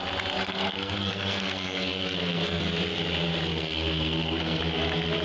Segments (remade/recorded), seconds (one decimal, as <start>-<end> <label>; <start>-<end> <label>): 0.0-0.4 recorded; 0.4-2.6 remade; 2.6-3.5 recorded; 3.5-4.6 remade; 4.6-5.2 recorded